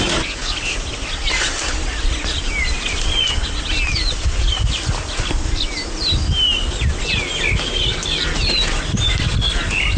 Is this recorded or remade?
recorded